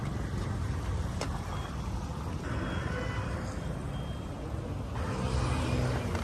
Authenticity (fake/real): real